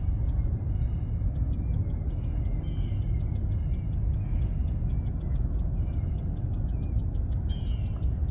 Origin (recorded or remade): recorded